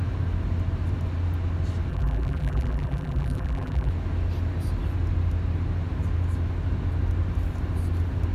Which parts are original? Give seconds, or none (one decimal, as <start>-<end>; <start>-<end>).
0.0-1.9; 3.9-8.3